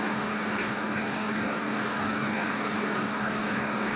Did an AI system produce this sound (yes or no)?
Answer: yes